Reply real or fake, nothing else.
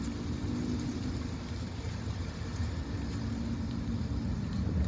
real